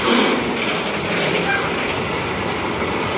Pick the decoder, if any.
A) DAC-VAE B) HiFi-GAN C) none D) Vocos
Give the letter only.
C